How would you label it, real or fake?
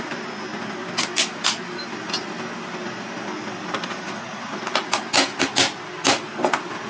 real